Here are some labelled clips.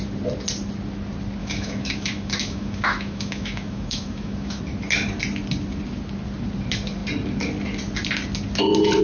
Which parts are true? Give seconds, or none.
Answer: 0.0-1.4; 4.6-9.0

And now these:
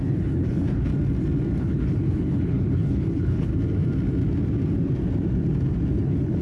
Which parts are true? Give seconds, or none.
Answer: 0.9-1.6; 3.5-6.0